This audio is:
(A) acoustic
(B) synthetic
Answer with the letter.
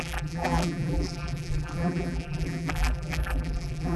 B